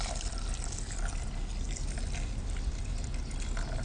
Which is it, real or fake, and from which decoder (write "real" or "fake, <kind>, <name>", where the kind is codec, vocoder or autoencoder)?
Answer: real